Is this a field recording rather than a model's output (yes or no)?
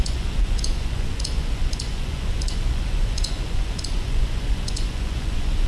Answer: no